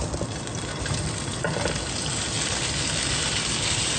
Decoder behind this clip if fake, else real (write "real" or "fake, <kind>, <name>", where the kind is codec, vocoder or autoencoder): real